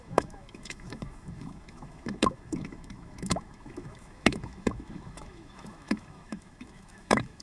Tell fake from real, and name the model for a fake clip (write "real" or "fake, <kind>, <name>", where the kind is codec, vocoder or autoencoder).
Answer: fake, autoencoder, DAC-VAE